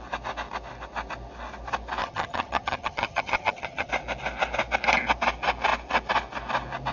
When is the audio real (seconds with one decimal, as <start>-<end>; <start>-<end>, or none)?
0.0-2.0; 3.9-6.9